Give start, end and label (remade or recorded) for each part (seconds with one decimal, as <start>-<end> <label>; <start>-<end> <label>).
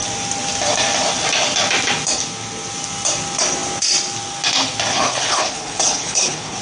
0.0-4.9 recorded; 4.9-6.6 remade